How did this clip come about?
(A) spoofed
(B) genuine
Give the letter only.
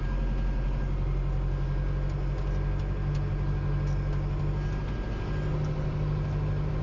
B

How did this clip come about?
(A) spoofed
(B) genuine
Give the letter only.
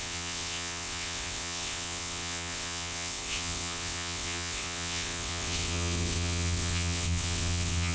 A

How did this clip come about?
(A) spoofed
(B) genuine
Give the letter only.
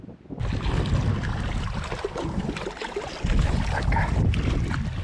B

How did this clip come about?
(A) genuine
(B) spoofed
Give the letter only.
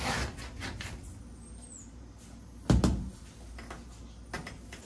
A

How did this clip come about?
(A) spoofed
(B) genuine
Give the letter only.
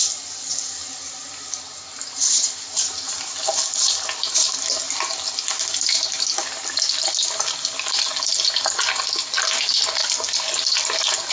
B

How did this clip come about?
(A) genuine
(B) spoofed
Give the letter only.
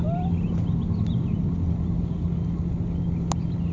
A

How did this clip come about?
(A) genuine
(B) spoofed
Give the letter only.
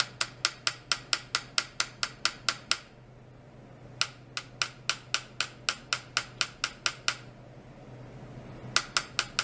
A